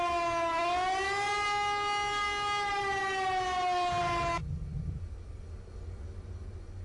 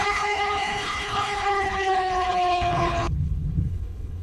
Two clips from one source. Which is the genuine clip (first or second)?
first